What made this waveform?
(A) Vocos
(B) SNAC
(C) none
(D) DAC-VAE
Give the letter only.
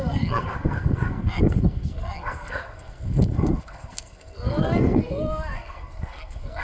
B